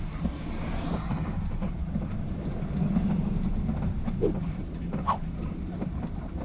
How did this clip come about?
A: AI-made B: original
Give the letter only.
A